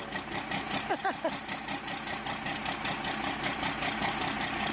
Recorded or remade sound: recorded